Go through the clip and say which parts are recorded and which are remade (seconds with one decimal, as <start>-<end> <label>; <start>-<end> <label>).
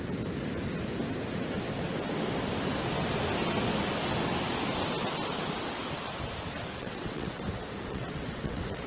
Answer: 0.0-6.8 recorded; 6.8-7.4 remade; 7.4-7.9 recorded; 7.9-8.9 remade